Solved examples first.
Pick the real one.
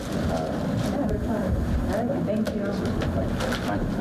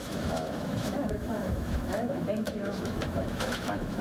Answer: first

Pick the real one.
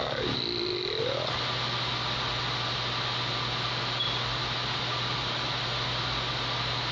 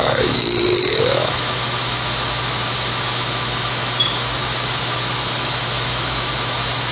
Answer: first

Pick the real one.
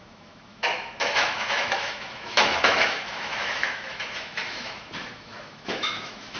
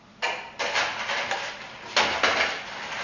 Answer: second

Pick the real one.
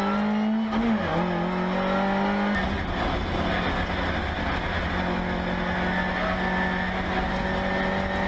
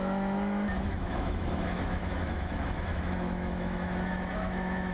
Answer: first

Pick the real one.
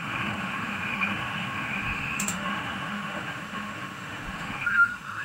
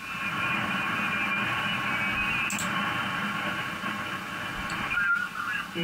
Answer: second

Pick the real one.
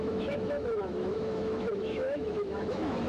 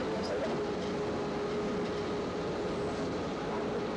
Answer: second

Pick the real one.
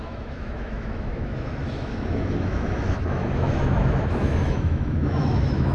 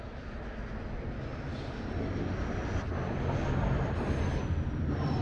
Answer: second